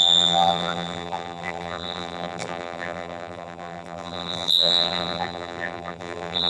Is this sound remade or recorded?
remade